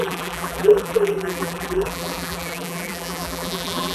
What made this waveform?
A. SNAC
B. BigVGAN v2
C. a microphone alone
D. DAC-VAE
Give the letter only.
B